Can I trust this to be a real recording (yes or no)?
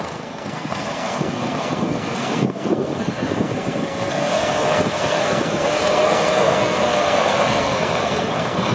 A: no